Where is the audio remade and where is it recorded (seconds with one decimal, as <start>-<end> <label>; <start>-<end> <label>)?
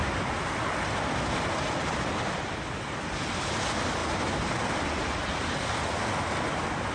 0.0-6.9 recorded